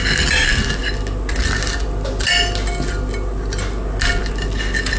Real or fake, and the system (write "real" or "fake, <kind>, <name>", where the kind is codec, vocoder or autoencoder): real